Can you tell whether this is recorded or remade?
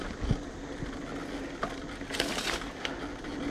recorded